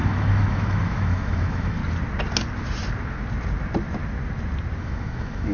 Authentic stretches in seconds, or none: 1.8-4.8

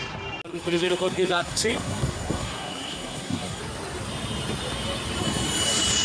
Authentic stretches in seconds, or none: 0.0-0.5; 3.6-6.0

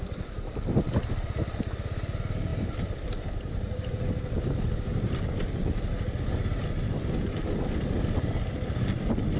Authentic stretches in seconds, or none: 0.0-9.4